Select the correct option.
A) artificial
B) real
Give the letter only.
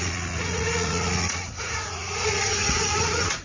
A